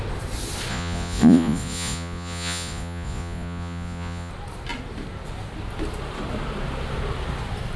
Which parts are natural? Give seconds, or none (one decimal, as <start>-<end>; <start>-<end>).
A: 0.0-0.7; 4.3-7.8